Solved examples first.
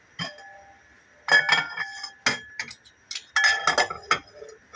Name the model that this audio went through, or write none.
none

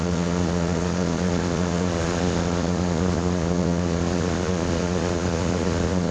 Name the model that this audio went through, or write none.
vocoder, Vocos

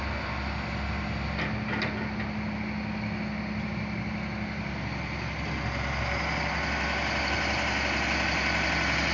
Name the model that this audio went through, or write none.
none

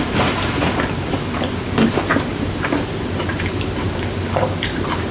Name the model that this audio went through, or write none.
vocoder, BigVGAN v2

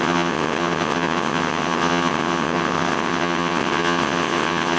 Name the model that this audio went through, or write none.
vocoder, WaveNeXt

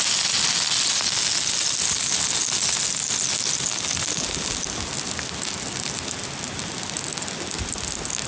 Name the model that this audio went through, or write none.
none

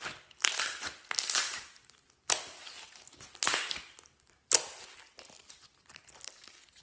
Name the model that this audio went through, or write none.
none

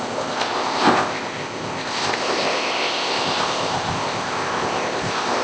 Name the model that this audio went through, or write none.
codec, ZipCodec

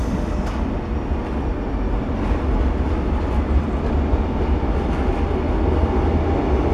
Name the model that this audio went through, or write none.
none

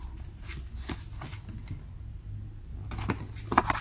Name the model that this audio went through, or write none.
none